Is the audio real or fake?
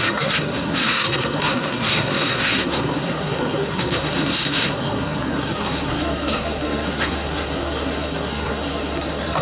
fake